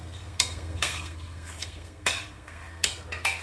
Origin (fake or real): fake